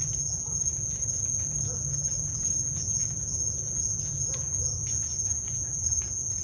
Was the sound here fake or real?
fake